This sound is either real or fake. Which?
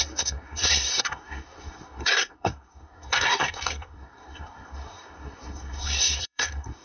fake